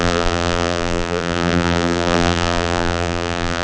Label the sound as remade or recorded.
remade